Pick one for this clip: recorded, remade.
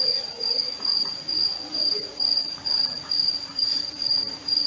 remade